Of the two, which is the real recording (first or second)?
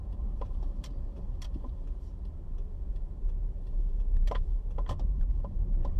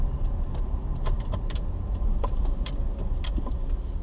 second